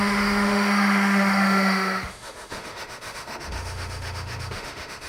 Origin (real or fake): fake